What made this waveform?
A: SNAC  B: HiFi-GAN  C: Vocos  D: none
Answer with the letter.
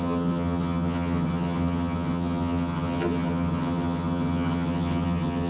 B